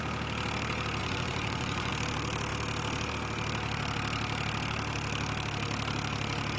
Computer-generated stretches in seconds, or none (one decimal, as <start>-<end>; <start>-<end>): 1.0-1.9